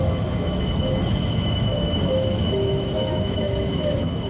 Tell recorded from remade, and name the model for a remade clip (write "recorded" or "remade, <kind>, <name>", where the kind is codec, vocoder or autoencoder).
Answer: remade, autoencoder, DAC-VAE